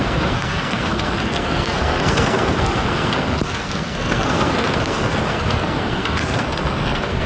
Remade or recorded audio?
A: remade